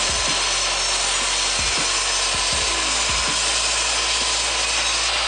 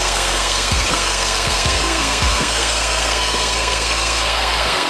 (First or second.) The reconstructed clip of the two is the second